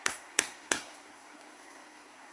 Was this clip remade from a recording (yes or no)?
yes